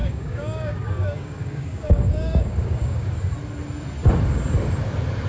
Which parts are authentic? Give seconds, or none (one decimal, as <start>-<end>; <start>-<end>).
3.2-5.3